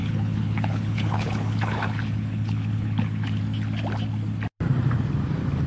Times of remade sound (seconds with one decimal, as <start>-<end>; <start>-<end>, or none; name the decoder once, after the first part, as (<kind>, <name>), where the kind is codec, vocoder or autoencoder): 0.0-3.4 (codec, HILCodec)